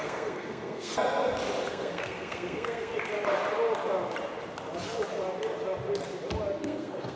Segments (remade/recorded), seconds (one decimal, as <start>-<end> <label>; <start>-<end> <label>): 0.0-0.9 remade; 0.9-1.7 recorded; 1.7-2.9 remade; 2.9-6.6 recorded; 6.6-7.2 remade